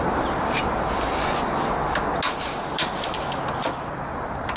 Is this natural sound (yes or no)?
yes